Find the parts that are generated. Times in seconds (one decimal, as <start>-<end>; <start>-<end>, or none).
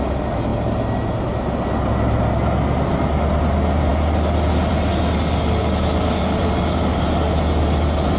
none